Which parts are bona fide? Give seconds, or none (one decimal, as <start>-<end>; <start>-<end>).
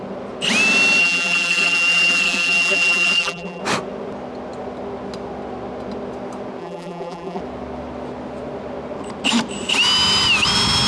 0.0-1.0; 3.6-6.6; 7.4-10.9